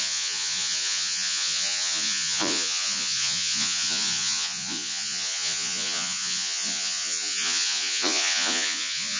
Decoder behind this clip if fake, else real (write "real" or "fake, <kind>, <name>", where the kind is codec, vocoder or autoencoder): fake, vocoder, Vocos